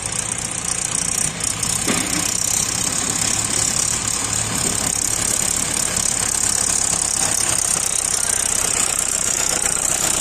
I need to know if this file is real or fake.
fake